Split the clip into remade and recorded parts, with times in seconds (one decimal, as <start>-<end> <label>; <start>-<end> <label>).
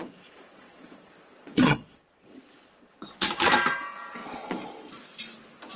0.0-3.5 remade; 3.5-4.2 recorded; 4.2-4.9 remade; 4.9-5.8 recorded